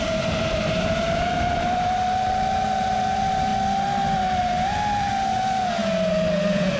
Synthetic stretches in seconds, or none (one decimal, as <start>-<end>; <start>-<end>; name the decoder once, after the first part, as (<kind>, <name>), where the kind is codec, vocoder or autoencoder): 0.0-3.5 (vocoder, BigVGAN v2); 4.4-5.1; 6.1-6.8